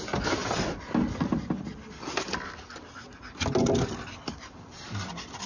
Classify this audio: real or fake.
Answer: real